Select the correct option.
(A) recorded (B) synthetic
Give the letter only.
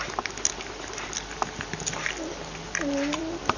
A